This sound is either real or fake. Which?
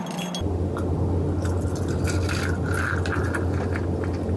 real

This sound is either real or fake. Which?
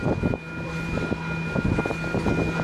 real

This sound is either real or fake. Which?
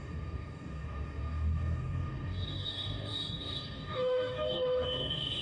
fake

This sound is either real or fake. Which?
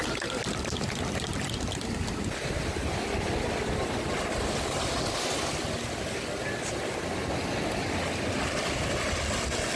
real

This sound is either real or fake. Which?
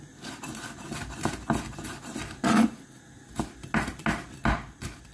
real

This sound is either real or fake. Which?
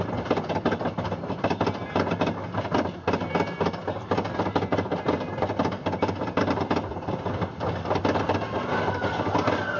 real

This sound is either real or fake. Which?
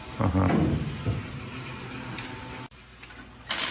real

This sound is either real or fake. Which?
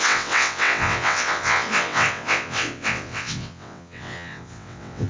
fake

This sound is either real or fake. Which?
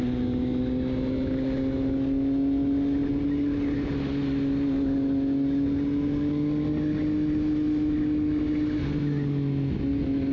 real